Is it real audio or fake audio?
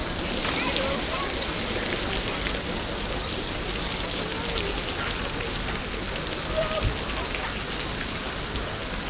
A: real